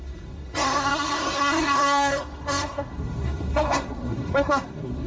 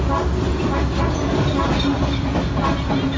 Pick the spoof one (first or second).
first